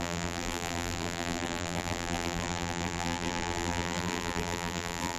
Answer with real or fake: fake